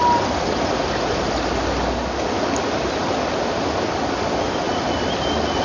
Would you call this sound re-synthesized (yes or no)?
no